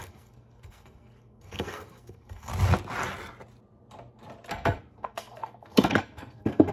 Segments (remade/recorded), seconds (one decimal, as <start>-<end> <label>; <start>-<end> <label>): 0.0-2.5 remade; 2.5-4.5 recorded; 4.5-6.7 remade